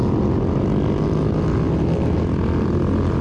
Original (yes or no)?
yes